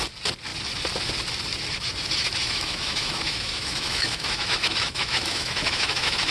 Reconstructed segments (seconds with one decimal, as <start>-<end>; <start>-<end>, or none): 2.4-6.3